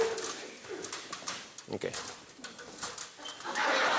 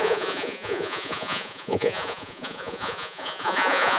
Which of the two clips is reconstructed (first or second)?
second